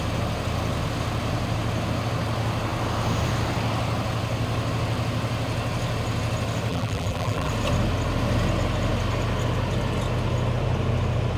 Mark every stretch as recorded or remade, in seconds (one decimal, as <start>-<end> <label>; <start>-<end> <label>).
0.0-6.7 recorded; 6.7-7.5 remade; 7.5-11.4 recorded